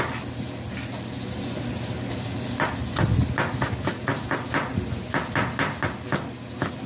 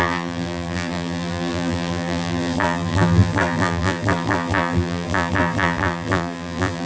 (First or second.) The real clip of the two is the first